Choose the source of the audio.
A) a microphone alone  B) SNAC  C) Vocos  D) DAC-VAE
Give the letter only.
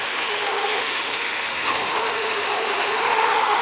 D